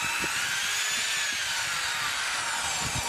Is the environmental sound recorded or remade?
recorded